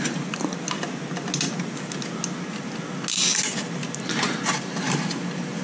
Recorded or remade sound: recorded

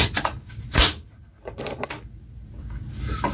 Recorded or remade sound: recorded